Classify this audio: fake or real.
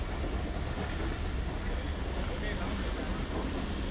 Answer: real